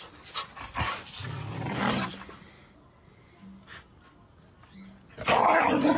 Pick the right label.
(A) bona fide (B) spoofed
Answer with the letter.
A